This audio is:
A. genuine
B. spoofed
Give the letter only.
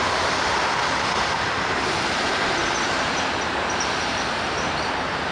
A